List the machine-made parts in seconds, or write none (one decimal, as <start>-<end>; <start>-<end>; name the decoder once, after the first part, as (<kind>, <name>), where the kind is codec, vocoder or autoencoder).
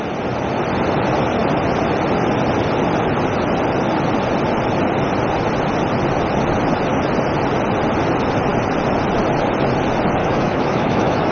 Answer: 10.2-11.3 (autoencoder, DAC-VAE)